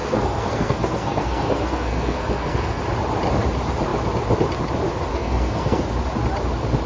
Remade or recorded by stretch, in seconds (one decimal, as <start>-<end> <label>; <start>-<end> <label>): 0.0-2.8 remade; 2.8-5.1 recorded; 5.1-5.8 remade; 5.8-6.9 recorded